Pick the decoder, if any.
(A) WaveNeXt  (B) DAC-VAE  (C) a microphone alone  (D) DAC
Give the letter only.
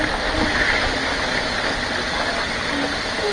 C